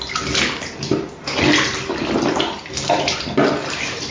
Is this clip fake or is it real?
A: real